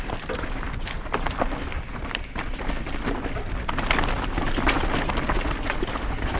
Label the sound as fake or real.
fake